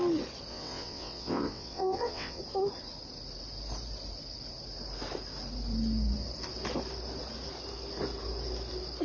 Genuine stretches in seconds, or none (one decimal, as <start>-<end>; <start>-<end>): 0.0-0.5; 2.4-9.0

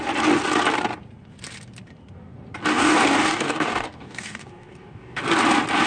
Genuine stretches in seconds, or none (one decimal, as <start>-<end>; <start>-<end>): 0.0-2.7; 5.2-5.9

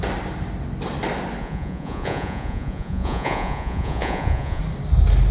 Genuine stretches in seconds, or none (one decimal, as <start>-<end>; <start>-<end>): 0.0-1.4; 4.6-5.3

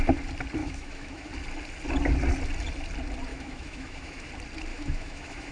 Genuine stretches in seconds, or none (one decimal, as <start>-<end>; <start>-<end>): 0.0-0.6; 1.3-3.3; 4.3-4.7

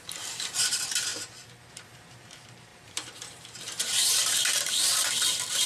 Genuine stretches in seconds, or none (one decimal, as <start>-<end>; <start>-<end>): 1.1-1.7